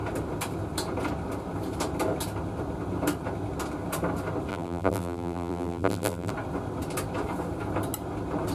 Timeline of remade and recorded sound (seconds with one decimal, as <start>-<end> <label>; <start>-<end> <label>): 0.0-4.5 recorded; 4.5-6.3 remade; 6.3-8.5 recorded